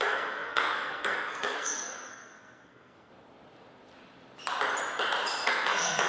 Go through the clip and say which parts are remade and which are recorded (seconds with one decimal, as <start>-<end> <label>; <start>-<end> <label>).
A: 0.0-3.1 remade; 3.1-5.5 recorded; 5.5-6.1 remade